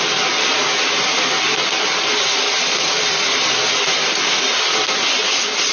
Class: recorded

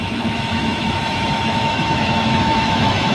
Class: remade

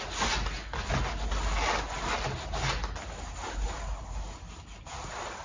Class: recorded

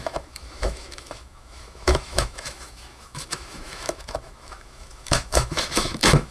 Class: remade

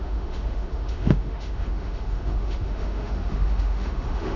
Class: remade